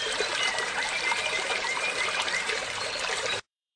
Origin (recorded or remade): remade